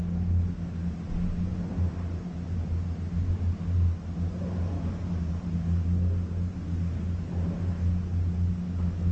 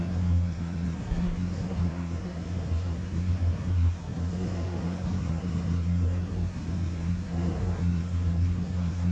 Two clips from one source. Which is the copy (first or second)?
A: second